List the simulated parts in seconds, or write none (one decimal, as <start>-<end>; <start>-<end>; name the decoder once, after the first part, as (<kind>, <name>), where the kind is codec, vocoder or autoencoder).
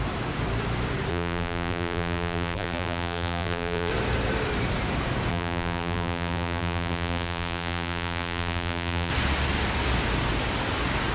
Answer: 1.1-3.9 (vocoder, BigVGAN v2); 5.3-9.1